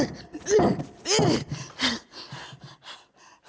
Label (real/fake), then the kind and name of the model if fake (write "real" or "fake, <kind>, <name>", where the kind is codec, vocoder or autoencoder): real